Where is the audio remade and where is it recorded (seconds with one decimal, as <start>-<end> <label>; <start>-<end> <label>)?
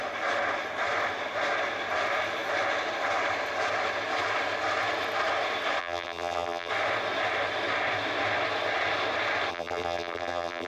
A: 0.0-5.8 recorded; 5.8-6.7 remade; 6.7-9.5 recorded; 9.5-10.7 remade